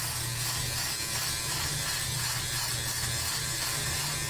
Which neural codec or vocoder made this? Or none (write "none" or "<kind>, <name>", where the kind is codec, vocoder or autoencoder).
none